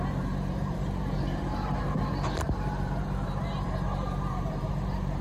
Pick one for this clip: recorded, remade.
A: remade